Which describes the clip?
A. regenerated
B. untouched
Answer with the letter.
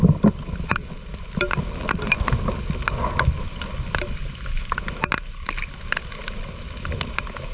B